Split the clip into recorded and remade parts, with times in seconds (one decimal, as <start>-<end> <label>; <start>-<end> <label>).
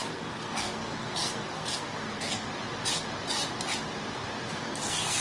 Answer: 0.0-2.5 remade; 2.5-4.5 recorded; 4.5-5.2 remade